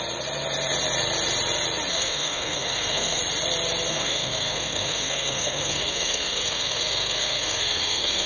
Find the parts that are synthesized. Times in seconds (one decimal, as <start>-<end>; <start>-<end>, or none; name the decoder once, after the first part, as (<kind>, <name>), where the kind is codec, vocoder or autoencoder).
1.9-3.2 (codec, SNAC); 3.9-8.3